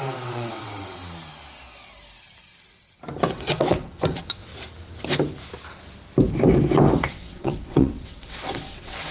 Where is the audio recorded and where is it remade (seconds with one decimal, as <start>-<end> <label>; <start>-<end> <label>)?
0.0-1.0 remade; 1.0-3.3 recorded; 3.3-4.5 remade; 4.5-7.1 recorded; 7.1-9.1 remade